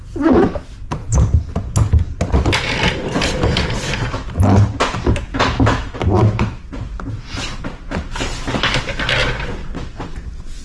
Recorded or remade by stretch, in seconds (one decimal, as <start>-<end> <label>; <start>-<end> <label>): 0.0-5.3 recorded; 5.3-6.7 remade; 6.7-10.6 recorded